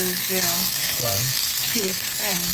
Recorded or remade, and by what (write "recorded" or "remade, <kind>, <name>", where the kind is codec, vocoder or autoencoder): remade, codec, SNAC